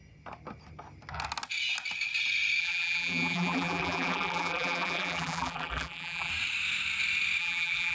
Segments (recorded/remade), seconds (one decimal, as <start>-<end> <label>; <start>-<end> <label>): 0.0-2.6 recorded; 2.6-6.3 remade; 6.3-7.4 recorded; 7.4-7.9 remade